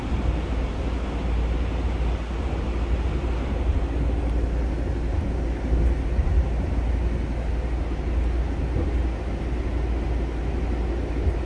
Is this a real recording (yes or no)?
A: yes